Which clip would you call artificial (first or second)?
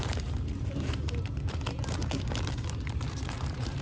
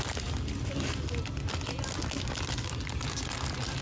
first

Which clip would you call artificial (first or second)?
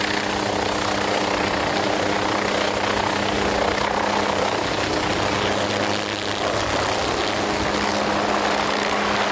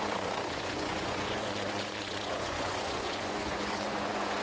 second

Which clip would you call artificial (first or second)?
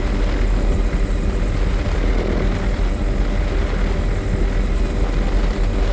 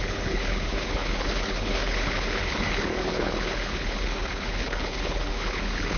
second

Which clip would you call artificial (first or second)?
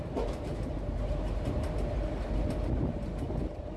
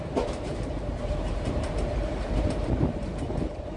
second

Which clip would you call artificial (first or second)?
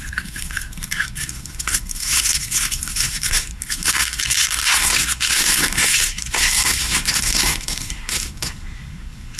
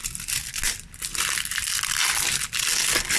first